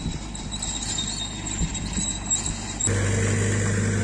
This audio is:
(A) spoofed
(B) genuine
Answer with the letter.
B